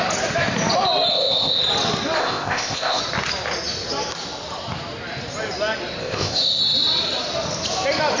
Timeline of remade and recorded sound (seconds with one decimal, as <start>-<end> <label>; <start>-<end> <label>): 0.0-1.1 recorded; 1.1-1.6 remade; 1.6-2.2 recorded; 2.2-3.0 remade; 3.0-6.0 recorded; 6.0-6.6 remade; 6.6-8.2 recorded